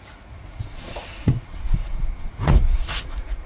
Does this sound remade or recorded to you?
remade